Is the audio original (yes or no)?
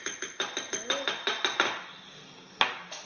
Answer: yes